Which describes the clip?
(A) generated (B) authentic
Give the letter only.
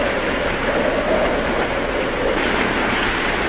A